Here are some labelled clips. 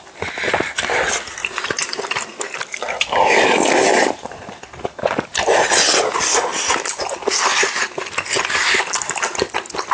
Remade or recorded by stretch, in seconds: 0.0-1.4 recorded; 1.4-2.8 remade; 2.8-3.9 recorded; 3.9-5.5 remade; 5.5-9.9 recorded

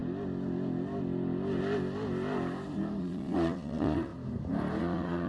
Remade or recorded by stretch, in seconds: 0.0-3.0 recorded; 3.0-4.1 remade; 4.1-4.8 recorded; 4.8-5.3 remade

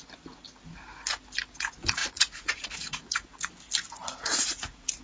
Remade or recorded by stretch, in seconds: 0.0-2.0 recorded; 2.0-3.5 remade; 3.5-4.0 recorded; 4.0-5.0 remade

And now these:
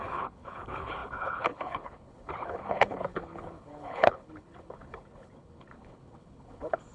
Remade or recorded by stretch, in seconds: 0.0-6.9 remade

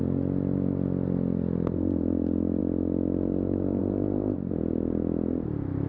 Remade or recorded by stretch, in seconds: 0.0-5.9 recorded